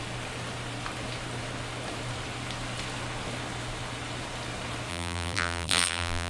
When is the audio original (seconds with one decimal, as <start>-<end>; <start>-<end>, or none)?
0.0-4.9